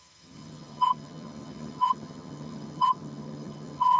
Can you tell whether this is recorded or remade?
remade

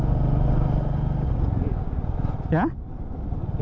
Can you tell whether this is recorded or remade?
recorded